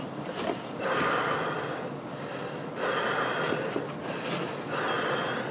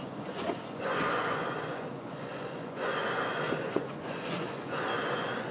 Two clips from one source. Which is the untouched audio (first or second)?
first